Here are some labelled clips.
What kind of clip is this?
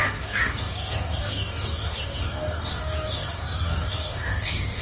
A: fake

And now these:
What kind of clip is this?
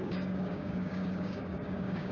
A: fake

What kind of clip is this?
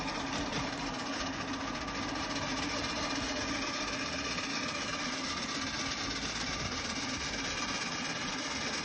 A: real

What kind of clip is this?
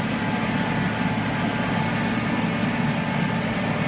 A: real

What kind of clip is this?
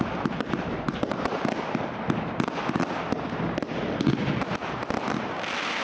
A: real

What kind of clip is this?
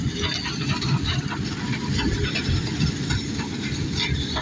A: real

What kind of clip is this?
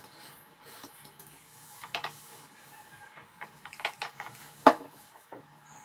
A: fake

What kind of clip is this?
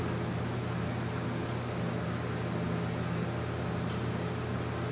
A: real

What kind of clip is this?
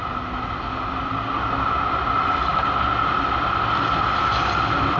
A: real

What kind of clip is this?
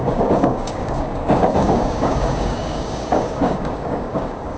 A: fake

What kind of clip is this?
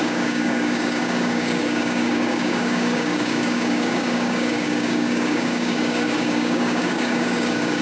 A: fake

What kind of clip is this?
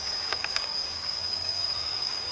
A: fake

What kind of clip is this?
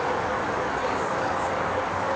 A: fake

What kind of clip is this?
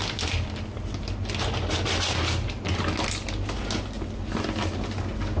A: real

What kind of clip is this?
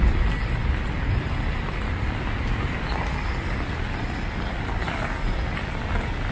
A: real